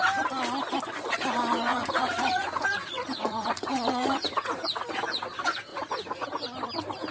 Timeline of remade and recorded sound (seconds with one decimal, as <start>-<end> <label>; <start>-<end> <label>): 0.0-1.7 recorded; 1.7-4.6 remade; 4.6-5.7 recorded; 5.7-6.3 remade; 6.3-7.1 recorded